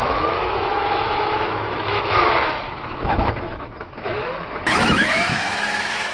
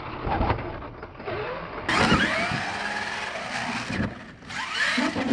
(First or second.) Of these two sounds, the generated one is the first